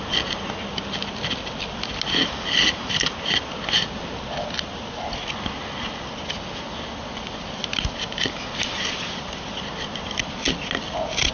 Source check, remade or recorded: recorded